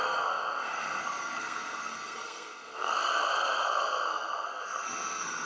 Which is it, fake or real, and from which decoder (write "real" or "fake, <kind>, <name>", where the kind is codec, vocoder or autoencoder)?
fake, codec, SNAC